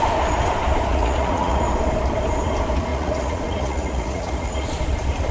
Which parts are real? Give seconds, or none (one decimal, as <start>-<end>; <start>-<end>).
0.0-0.9; 1.6-2.9; 4.7-5.3